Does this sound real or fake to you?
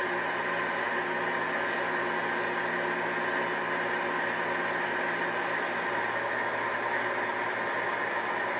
real